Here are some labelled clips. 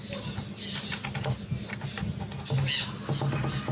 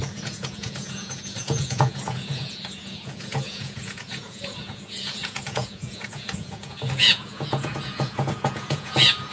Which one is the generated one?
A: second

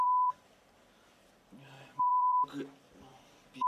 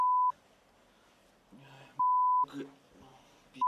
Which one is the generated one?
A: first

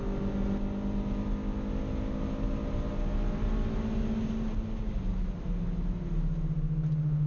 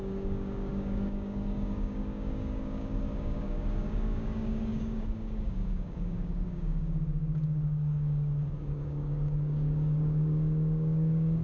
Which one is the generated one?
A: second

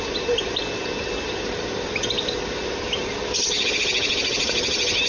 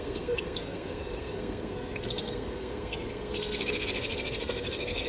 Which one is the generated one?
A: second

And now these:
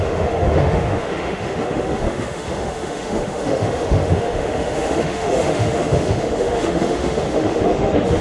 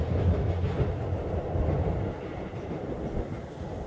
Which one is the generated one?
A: first